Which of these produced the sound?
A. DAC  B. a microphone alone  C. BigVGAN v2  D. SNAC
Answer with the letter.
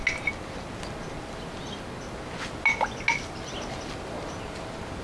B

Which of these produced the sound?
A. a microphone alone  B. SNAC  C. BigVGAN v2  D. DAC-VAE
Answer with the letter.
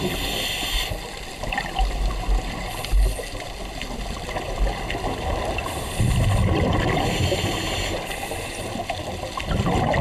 A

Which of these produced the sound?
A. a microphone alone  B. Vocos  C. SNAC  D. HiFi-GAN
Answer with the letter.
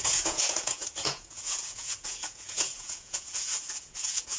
B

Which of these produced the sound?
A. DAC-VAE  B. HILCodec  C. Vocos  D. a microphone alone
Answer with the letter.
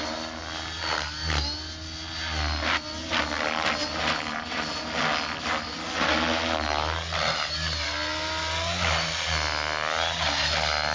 D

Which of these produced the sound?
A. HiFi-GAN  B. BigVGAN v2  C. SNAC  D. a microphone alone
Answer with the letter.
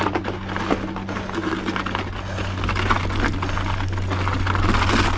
D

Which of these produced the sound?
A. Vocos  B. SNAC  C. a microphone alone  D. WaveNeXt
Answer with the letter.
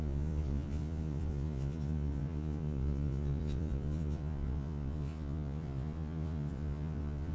A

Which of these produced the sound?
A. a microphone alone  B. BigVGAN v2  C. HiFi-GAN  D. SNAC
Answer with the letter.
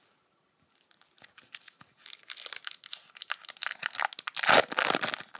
A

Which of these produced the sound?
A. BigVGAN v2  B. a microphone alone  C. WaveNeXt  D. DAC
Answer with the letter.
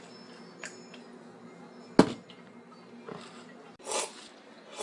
B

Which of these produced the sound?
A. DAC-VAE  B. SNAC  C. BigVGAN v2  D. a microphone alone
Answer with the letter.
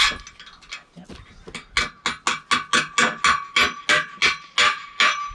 D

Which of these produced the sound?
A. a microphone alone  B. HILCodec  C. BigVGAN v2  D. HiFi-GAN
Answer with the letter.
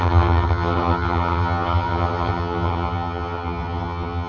D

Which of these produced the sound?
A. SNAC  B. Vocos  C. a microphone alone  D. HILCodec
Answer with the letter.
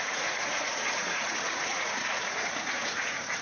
B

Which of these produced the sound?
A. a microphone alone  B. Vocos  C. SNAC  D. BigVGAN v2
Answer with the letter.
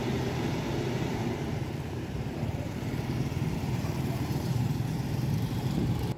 D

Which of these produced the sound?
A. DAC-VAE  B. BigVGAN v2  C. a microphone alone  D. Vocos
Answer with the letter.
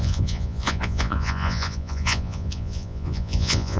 D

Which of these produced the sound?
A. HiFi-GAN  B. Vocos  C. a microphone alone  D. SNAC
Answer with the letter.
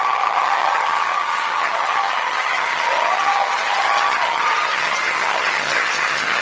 A